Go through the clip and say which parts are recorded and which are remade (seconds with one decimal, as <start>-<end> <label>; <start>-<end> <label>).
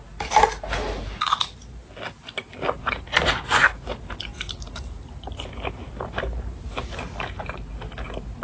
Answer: 0.0-8.4 recorded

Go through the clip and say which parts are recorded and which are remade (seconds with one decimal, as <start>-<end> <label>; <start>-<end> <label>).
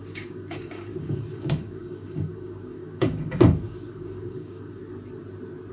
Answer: 0.0-4.8 remade; 4.8-5.7 recorded